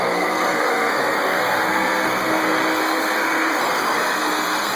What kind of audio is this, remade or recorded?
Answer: remade